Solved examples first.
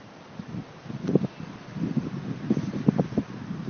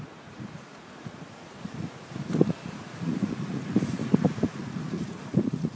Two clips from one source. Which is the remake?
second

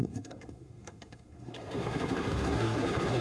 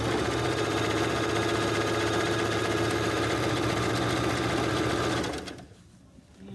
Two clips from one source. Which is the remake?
first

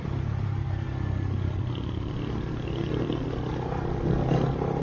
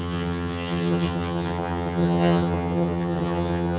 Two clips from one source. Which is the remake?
second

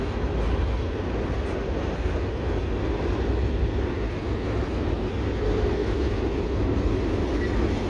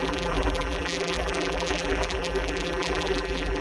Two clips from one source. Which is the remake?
second